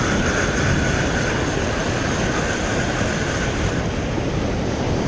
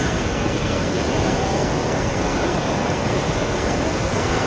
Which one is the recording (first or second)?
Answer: first